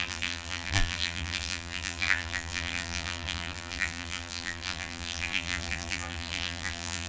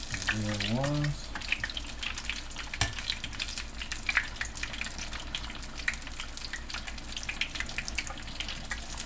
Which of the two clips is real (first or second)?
second